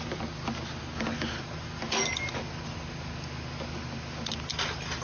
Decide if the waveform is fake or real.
real